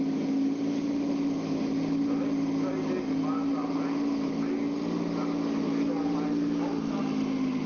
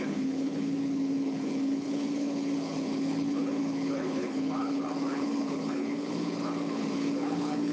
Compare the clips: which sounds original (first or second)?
first